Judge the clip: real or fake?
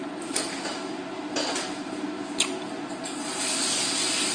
real